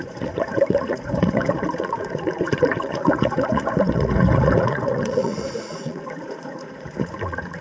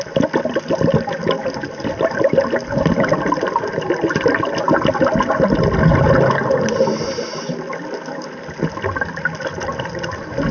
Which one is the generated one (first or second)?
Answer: first